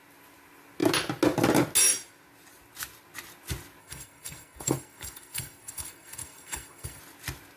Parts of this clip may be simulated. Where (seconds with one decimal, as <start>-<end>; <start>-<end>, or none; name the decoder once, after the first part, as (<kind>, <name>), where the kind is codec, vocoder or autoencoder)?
3.8-7.0 (codec, SNAC)